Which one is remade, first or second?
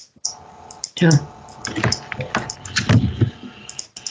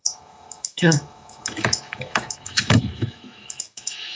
second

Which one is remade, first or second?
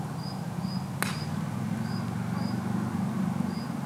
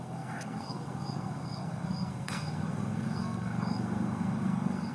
second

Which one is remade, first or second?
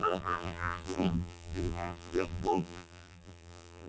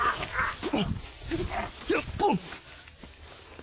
first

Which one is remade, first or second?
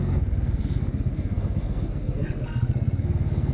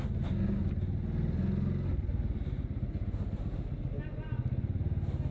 first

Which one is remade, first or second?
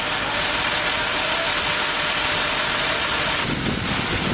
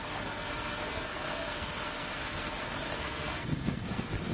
second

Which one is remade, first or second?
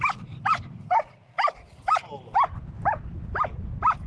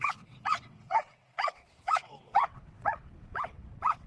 second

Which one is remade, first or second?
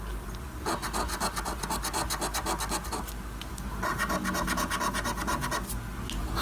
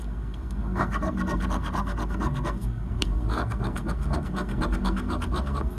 second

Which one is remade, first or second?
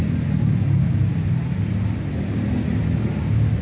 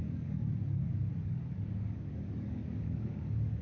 second